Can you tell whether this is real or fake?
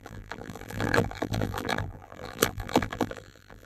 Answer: fake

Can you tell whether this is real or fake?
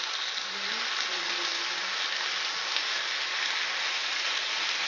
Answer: real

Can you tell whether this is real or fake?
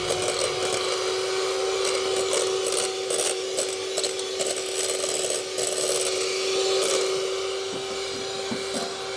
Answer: real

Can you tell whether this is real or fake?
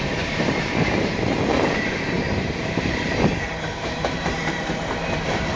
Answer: fake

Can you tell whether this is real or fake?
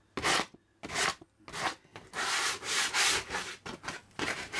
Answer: real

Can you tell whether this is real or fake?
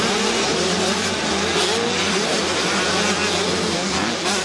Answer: real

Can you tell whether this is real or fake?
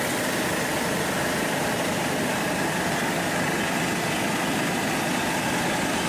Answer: fake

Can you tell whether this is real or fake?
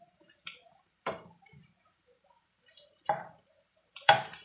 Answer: fake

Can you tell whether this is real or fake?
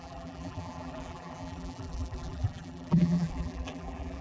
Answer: fake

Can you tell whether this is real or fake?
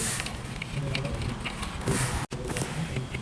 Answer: real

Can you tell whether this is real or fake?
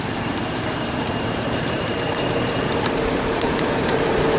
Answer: fake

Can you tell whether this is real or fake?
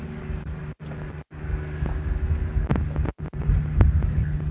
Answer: real